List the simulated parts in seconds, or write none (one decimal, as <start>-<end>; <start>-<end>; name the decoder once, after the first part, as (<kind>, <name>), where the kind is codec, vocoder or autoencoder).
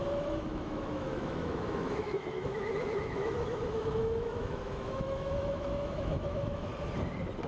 0.0-6.7 (autoencoder, DAC-VAE)